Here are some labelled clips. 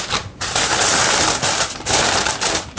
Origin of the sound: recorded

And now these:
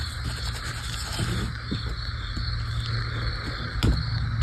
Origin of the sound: recorded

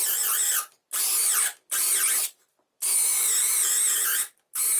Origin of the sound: recorded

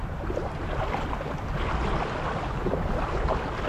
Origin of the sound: recorded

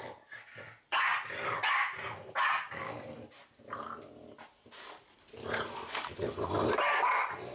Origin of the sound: recorded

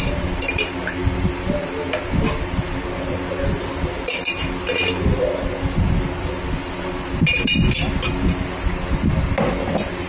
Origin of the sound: recorded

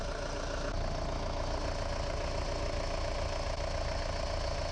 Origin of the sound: recorded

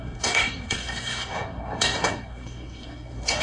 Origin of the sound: remade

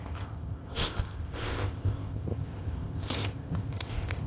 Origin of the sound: remade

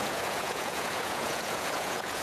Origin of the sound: remade